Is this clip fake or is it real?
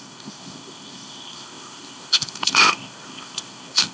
fake